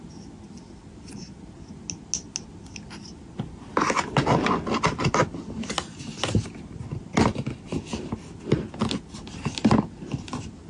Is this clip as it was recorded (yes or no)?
yes